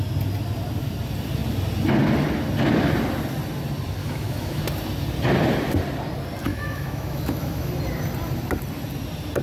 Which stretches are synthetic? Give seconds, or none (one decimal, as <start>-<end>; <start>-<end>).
4.0-4.6; 6.5-7.7